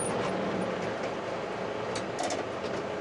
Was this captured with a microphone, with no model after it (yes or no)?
yes